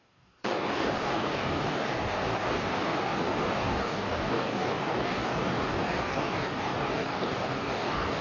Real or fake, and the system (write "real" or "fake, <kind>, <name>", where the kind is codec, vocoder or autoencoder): fake, codec, DAC